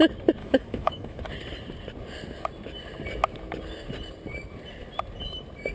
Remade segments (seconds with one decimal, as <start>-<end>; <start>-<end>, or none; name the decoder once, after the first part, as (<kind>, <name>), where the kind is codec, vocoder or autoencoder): 0.4-1.2 (autoencoder, DAC-VAE)